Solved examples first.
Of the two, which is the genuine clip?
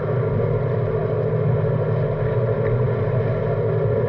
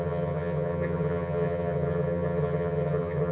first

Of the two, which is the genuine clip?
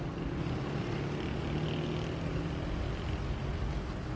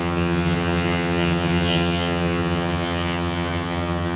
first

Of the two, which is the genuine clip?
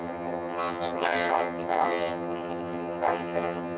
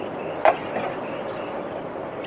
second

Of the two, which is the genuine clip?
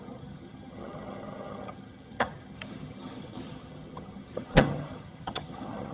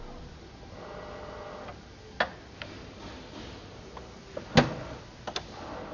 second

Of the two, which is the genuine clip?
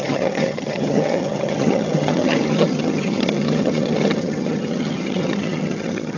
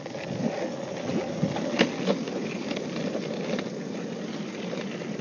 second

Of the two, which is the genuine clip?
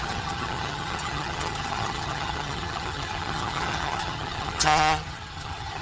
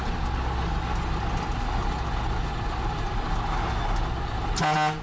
second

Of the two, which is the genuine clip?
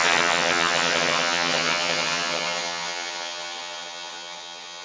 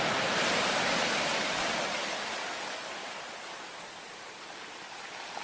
second